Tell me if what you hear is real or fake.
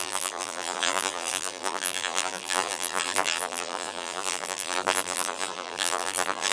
fake